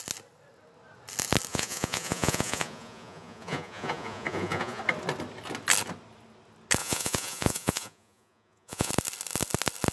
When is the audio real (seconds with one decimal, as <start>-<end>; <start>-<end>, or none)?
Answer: 0.0-1.5; 4.8-6.8; 8.9-9.9